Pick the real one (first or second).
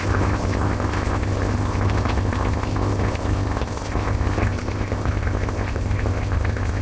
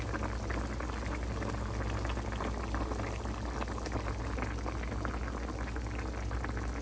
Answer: second